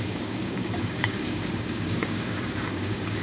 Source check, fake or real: fake